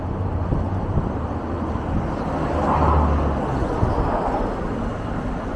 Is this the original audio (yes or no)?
yes